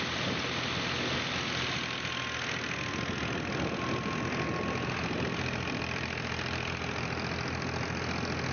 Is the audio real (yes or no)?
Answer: yes